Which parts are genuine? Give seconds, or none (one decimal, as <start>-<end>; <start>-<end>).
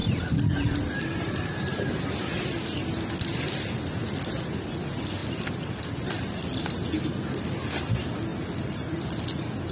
2.1-8.3